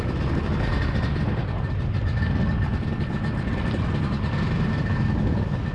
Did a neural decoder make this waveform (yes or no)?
no